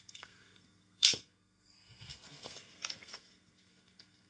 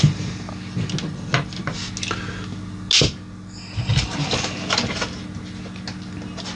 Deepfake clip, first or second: first